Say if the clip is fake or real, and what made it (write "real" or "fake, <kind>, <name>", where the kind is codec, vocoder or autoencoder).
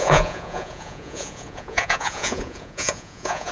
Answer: fake, vocoder, Vocos